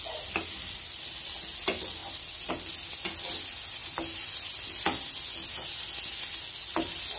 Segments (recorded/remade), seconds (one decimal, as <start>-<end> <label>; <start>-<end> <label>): 0.0-7.2 recorded